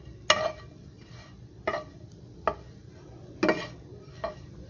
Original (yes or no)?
yes